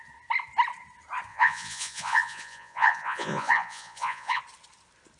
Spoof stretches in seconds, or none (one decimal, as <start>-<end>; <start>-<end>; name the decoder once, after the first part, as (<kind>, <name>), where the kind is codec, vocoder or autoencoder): 1.3-4.4 (vocoder, Vocos)